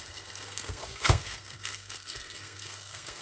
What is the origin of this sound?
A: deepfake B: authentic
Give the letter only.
A